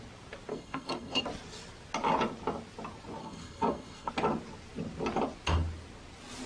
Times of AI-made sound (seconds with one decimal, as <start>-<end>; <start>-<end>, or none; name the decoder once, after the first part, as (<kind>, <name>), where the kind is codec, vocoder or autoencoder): 0.5-1.2 (codec, SNAC); 3.2-4.1